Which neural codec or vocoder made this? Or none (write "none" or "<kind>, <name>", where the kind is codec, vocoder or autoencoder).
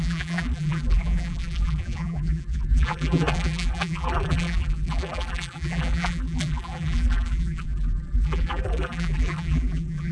vocoder, BigVGAN v2